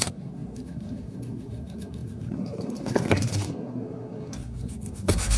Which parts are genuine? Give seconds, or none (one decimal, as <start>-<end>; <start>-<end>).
none